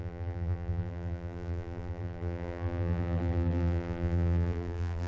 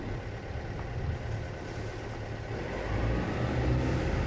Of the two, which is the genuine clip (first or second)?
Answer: second